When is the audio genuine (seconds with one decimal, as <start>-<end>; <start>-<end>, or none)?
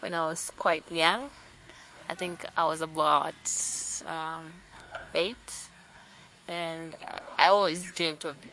2.0-4.0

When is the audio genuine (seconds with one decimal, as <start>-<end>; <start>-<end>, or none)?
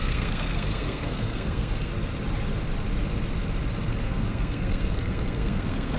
1.9-3.9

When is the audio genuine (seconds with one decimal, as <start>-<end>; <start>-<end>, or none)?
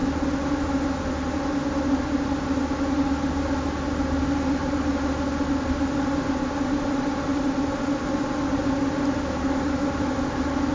0.0-10.7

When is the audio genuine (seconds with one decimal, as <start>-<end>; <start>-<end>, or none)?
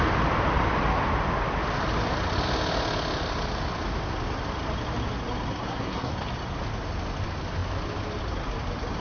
0.0-5.5; 6.1-9.0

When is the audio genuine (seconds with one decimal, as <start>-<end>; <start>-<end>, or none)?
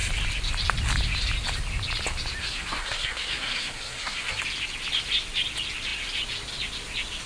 0.0-2.4; 4.4-7.3